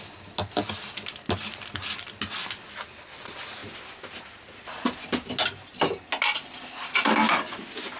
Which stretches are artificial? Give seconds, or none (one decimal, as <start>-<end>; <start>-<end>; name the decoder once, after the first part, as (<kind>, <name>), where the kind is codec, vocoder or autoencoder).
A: none